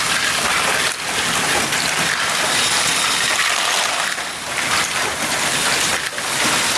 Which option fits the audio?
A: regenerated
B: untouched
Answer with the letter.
B